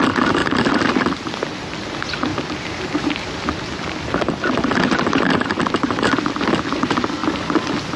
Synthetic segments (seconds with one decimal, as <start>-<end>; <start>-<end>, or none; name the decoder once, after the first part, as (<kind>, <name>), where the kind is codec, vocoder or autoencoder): 7.2-8.0 (vocoder, BigVGAN v2)